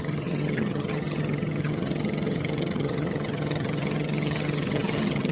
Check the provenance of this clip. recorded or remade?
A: remade